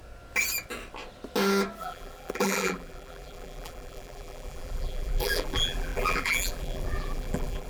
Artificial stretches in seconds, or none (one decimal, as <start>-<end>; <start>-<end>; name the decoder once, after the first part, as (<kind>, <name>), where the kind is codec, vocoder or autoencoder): 1.8-7.7 (vocoder, BigVGAN v2)